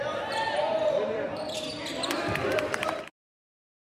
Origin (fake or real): fake